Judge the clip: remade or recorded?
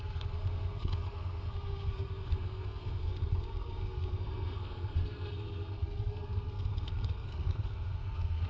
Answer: remade